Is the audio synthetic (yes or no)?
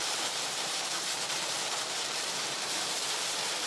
yes